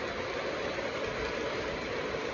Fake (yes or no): no